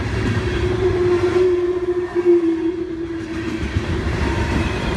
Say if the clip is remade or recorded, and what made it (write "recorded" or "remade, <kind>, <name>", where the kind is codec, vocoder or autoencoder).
remade, vocoder, BigVGAN v2